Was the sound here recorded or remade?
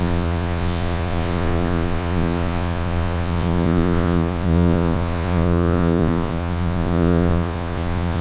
remade